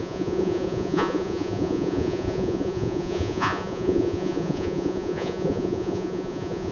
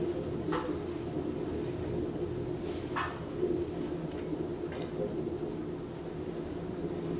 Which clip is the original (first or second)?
second